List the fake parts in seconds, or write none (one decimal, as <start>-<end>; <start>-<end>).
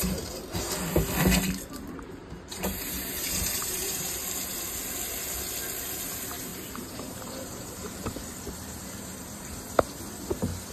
2.2-4.2; 6.5-8.0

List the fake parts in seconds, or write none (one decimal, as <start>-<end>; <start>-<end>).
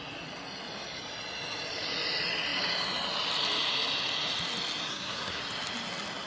4.9-5.4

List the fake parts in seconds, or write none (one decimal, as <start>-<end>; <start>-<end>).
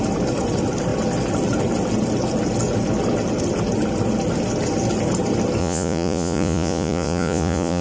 5.6-7.8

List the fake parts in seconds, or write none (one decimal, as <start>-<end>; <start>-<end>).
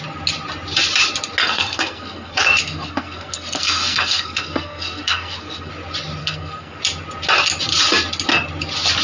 1.4-5.7; 6.2-6.8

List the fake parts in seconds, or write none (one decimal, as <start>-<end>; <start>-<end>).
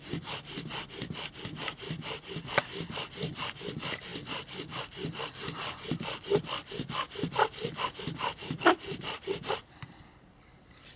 none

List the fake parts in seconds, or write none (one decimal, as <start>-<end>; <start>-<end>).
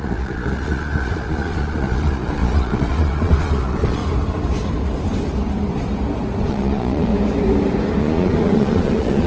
0.0-4.0; 6.4-7.1; 8.0-9.3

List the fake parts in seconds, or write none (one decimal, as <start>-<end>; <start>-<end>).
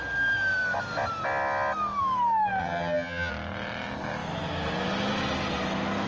2.6-3.3